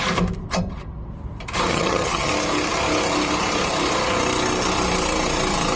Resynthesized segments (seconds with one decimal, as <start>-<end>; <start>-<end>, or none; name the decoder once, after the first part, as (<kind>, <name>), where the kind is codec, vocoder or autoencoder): 1.7-2.3 (vocoder, HiFi-GAN)